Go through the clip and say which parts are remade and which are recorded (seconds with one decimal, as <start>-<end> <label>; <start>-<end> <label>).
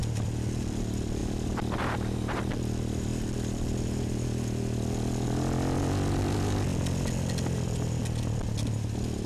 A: 0.0-1.2 recorded; 1.2-2.5 remade; 2.5-9.3 recorded